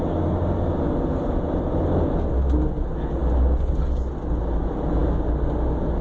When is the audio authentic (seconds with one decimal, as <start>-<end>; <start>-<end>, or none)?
0.0-6.0